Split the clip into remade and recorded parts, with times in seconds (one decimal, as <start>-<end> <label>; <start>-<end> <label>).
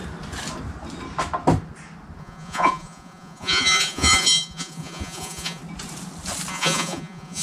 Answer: 0.0-2.2 recorded; 2.2-5.6 remade; 5.6-6.5 recorded; 6.5-7.4 remade